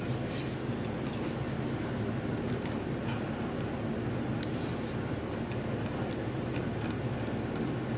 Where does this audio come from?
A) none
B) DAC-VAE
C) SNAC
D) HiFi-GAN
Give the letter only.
A